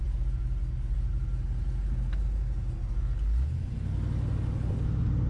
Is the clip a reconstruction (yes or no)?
no